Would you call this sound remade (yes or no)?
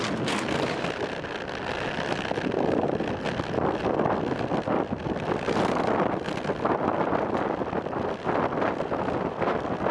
no